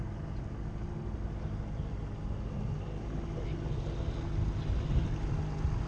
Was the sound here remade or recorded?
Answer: recorded